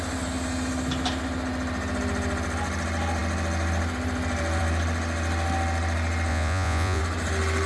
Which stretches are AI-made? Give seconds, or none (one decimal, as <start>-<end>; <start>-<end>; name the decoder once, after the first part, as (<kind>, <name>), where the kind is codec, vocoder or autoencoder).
6.3-7.0 (vocoder, Vocos)